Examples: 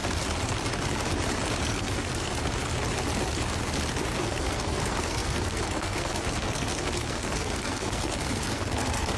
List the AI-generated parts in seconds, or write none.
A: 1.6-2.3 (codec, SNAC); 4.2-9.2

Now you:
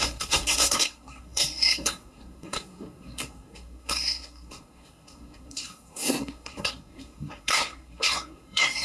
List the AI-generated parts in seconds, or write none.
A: 0.0-8.8 (codec, SNAC)

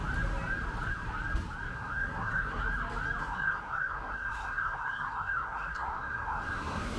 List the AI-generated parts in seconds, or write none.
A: 1.7-2.6 (codec, SNAC); 3.2-7.0

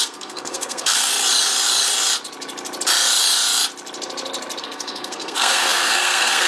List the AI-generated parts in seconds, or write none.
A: 0.0-1.1 (codec, SNAC); 4.6-6.5

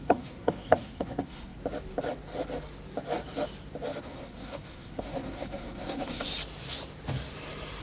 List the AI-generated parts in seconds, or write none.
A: 0.0-1.6 (codec, SNAC); 4.0-6.3

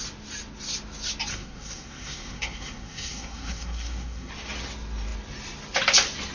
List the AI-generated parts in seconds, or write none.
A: 1.3-4.3 (codec, SNAC)

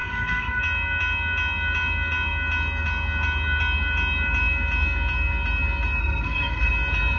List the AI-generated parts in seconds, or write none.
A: 0.0-0.6 (codec, SNAC); 6.0-6.7